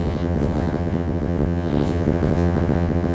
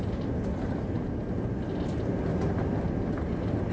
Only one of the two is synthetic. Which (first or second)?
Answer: first